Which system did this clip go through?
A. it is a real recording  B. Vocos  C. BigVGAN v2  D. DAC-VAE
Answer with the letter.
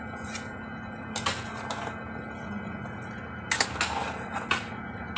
A